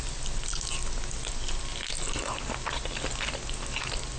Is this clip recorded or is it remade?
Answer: recorded